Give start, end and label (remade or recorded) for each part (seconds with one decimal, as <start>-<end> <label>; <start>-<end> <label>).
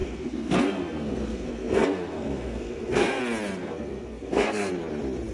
0.0-3.2 remade; 3.2-3.6 recorded; 3.6-4.7 remade; 4.7-5.3 recorded